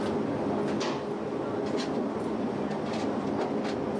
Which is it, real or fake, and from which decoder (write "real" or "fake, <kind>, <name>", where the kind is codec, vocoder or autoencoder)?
real